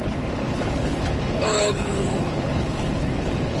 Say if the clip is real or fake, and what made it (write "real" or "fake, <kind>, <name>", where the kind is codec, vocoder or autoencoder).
fake, codec, HILCodec